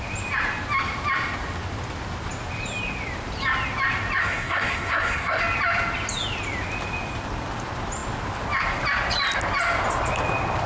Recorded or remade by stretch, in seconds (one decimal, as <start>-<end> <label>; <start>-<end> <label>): 0.0-4.2 recorded; 4.2-5.4 remade; 5.4-10.7 recorded